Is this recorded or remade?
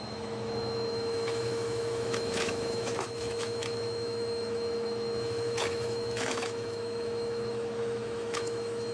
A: remade